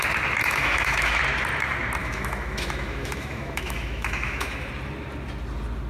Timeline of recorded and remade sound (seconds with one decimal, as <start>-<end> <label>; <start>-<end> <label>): 0.0-0.4 recorded; 0.4-1.2 remade; 1.2-2.0 recorded; 2.0-4.7 remade; 4.7-5.9 recorded